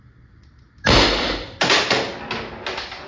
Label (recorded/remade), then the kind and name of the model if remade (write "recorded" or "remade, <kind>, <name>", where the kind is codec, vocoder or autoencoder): recorded